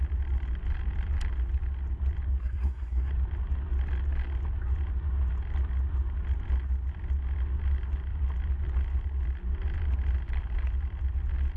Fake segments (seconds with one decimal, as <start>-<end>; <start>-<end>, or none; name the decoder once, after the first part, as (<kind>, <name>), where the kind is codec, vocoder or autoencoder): 2.4-3.1 (codec, SNAC)